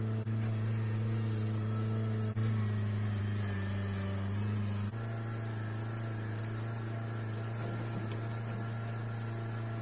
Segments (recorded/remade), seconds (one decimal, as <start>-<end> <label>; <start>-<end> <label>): 0.0-9.8 recorded